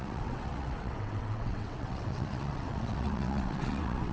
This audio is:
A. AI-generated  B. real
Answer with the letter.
A